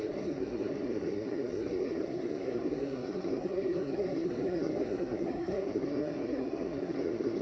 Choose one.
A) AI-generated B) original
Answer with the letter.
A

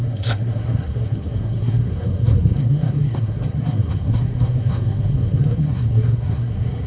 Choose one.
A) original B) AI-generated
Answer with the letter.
B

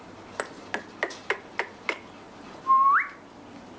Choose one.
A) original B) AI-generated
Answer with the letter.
A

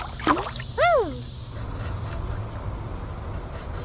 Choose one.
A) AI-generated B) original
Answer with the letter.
B